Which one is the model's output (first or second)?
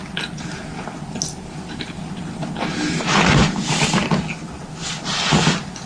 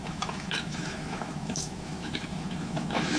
second